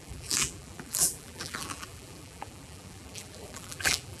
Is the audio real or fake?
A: fake